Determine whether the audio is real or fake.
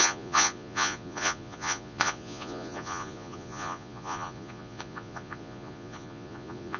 fake